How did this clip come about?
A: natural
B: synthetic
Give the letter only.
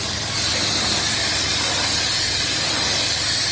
A